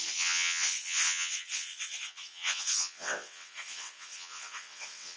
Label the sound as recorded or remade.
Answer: remade